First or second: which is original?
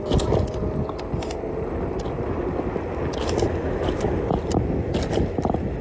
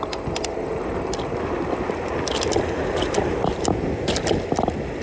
first